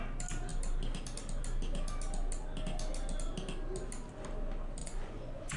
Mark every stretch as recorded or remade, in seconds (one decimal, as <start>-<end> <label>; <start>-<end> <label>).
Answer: 0.0-4.8 recorded; 4.8-5.6 remade